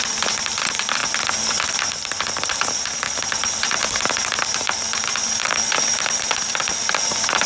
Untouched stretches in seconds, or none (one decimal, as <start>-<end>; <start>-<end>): 0.0-7.5